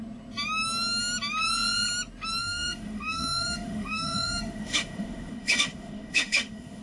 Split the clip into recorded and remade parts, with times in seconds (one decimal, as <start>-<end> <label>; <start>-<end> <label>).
0.0-2.4 recorded; 2.4-6.8 remade

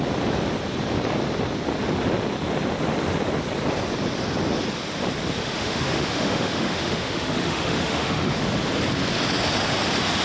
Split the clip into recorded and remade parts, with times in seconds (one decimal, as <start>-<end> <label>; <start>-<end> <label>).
0.0-5.4 recorded; 5.4-8.4 remade; 8.4-10.2 recorded

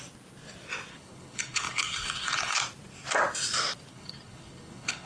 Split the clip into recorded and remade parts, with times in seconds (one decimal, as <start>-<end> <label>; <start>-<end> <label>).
0.0-0.9 recorded; 0.9-2.6 remade; 2.6-3.9 recorded; 3.9-5.1 remade

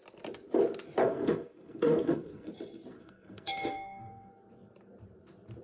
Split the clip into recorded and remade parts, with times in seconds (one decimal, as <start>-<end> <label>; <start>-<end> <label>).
0.0-1.0 recorded; 1.0-2.5 remade; 2.5-2.9 recorded; 2.9-4.3 remade; 4.3-5.6 recorded

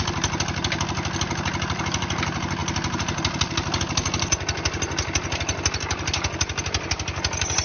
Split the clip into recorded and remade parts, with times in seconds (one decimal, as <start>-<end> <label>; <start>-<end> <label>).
0.0-7.6 recorded

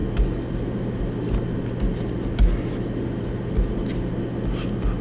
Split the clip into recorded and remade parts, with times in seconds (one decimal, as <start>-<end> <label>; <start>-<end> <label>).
0.0-5.0 recorded

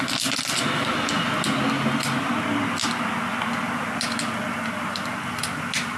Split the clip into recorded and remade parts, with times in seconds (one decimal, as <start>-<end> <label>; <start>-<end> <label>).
0.0-6.0 recorded